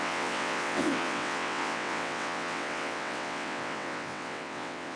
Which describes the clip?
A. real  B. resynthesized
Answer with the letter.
B